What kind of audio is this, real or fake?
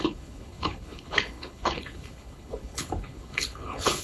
fake